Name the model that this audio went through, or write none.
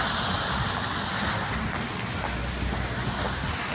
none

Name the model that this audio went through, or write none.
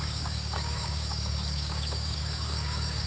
codec, DAC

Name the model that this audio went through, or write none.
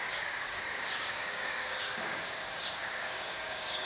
codec, DAC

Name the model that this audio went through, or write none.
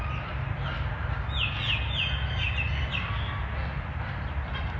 none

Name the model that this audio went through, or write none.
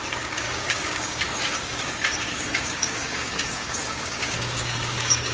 codec, DAC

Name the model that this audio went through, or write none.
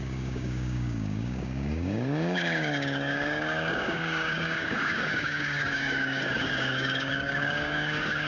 codec, DAC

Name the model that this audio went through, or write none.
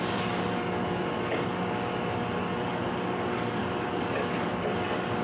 codec, DAC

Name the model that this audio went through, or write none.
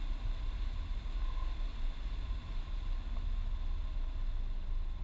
none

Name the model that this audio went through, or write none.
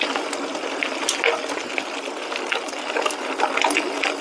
none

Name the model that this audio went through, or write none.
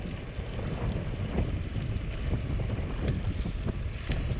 none